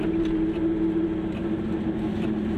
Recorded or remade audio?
recorded